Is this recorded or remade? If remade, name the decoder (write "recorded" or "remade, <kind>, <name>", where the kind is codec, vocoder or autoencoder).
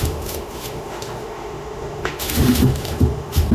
remade, autoencoder, DAC-VAE